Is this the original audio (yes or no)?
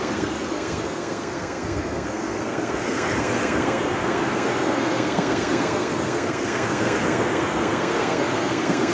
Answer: no